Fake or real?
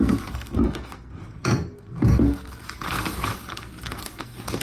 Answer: fake